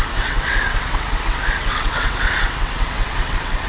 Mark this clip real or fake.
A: fake